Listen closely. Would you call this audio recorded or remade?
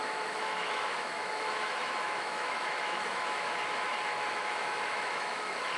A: remade